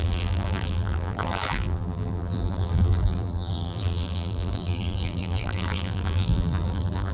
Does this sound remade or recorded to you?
remade